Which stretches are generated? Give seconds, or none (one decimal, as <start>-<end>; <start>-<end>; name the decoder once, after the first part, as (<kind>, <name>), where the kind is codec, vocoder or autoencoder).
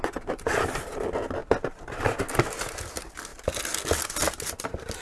none